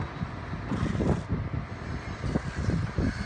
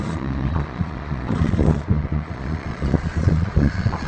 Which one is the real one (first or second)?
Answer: first